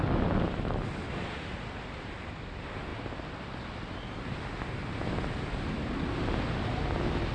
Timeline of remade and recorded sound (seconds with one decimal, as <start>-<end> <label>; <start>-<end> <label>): 0.0-7.3 recorded